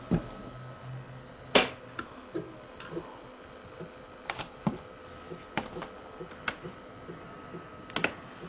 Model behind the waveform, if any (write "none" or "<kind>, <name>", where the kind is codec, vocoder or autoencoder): none